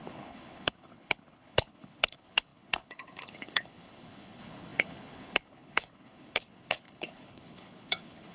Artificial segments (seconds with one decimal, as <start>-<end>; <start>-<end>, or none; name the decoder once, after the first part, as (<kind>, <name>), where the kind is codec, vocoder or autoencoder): 0.0-8.3 (codec, HILCodec)